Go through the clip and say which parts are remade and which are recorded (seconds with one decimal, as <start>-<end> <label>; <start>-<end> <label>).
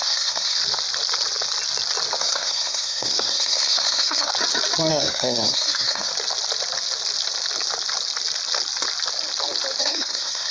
0.0-0.6 remade; 0.6-2.2 recorded; 2.2-4.3 remade; 4.3-4.9 recorded; 4.9-6.1 remade; 6.1-9.8 recorded; 9.8-10.5 remade